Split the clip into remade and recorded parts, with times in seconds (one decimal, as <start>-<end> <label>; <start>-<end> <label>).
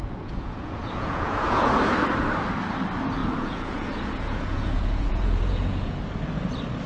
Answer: 0.0-1.7 remade; 1.7-3.2 recorded; 3.2-6.0 remade; 6.0-6.9 recorded